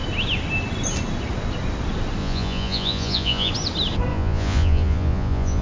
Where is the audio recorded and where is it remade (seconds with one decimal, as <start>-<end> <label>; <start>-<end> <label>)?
0.0-2.2 recorded; 2.2-3.5 remade; 3.5-4.1 recorded; 4.1-5.6 remade